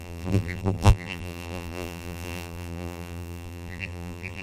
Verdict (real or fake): fake